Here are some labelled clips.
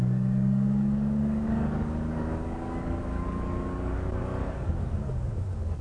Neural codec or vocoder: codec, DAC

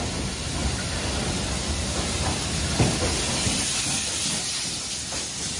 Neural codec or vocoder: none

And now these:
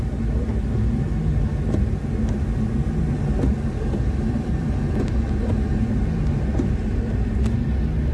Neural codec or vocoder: none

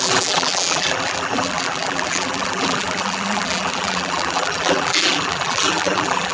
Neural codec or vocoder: vocoder, BigVGAN v2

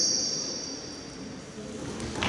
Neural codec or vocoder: none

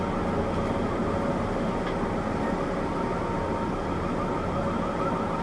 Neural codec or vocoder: none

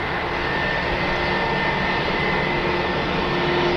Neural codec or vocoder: none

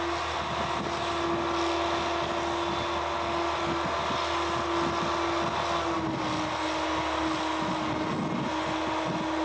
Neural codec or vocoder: none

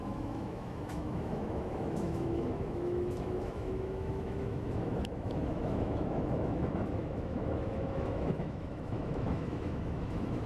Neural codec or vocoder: autoencoder, DAC-VAE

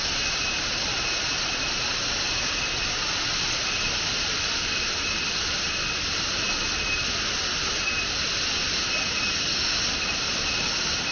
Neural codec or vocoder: none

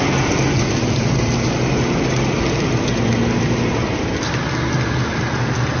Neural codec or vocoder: none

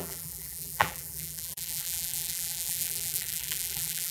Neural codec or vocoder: vocoder, BigVGAN v2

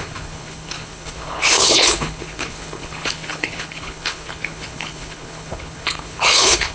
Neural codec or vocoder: codec, HILCodec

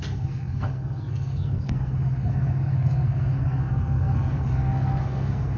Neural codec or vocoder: codec, SNAC